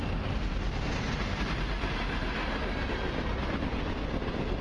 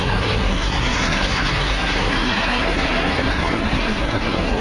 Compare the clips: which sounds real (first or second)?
first